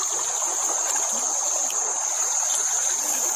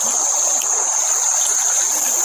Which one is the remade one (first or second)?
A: second